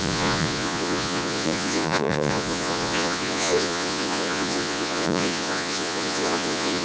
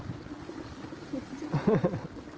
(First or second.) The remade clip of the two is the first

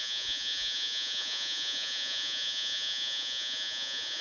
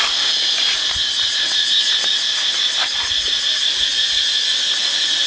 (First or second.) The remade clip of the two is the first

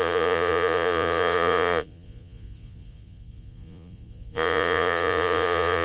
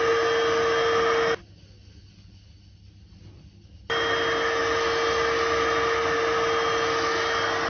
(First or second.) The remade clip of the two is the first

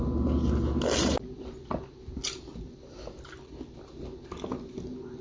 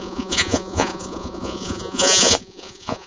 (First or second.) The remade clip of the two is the second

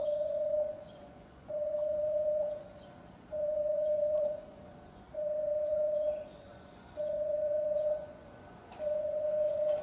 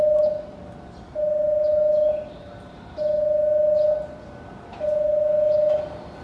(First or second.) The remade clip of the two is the first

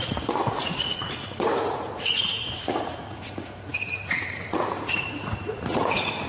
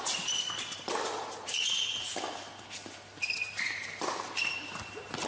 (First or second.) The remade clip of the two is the first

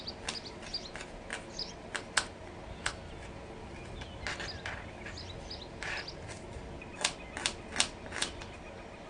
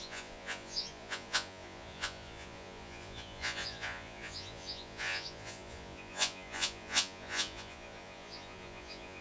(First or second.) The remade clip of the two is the second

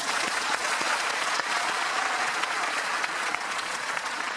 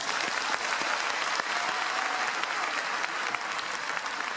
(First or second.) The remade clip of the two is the first